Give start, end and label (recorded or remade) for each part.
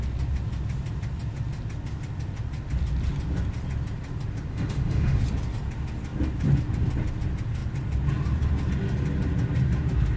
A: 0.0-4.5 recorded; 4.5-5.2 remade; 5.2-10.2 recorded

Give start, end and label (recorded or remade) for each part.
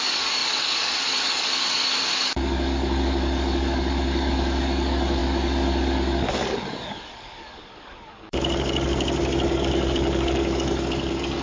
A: 0.0-11.4 remade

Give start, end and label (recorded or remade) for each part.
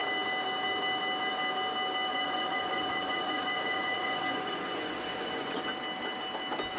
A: 0.0-2.1 recorded; 2.1-5.6 remade; 5.6-6.8 recorded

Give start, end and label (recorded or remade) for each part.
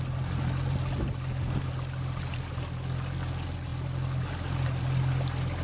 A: 0.0-5.6 recorded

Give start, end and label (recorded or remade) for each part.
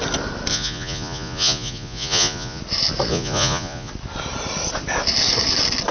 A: 0.0-0.5 recorded; 0.5-2.6 remade; 2.6-3.1 recorded; 3.1-3.9 remade; 3.9-5.9 recorded